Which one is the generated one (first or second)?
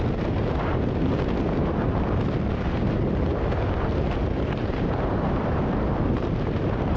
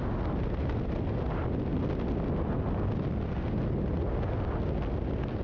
first